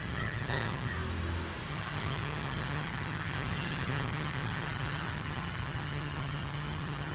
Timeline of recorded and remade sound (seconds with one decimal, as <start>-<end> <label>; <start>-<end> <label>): 0.0-0.9 remade; 0.9-1.7 recorded; 1.7-7.1 remade